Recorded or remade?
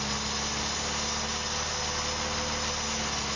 recorded